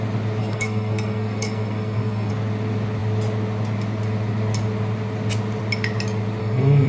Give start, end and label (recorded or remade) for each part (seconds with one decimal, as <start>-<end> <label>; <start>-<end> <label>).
0.0-0.4 recorded; 0.4-2.3 remade; 2.3-6.4 recorded; 6.4-6.9 remade